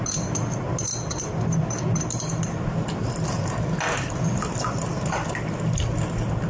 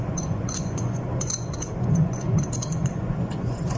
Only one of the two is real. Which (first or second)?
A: first